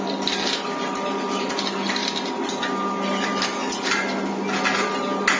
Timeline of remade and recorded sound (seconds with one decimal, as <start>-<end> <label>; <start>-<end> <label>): 0.0-5.4 recorded